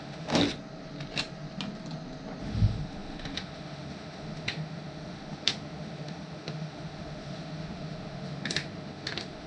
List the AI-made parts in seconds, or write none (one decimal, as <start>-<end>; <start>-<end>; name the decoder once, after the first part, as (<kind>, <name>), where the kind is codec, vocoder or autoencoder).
0.0-0.4 (autoencoder, DAC-VAE); 2.4-9.5